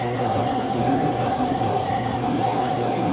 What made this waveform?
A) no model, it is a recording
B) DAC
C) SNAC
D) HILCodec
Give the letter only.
C